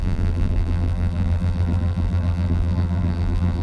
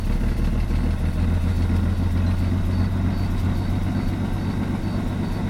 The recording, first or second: second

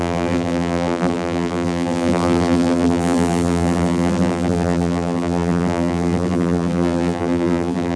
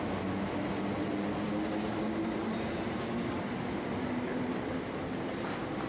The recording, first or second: second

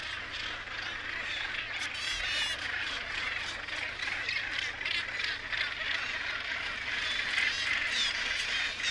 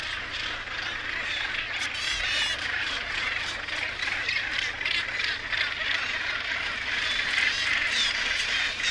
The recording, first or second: first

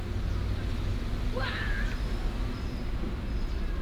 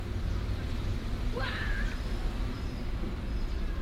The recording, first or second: first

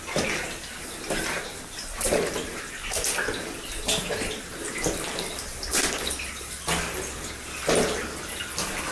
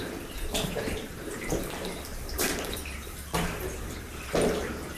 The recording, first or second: first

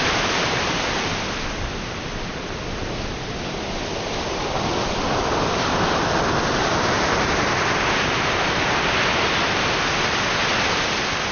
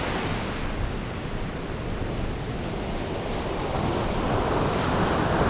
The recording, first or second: second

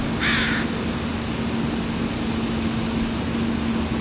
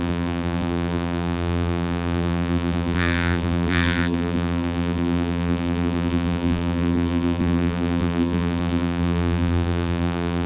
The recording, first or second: first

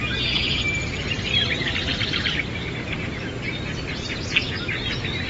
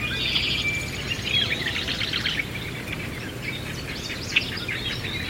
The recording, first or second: second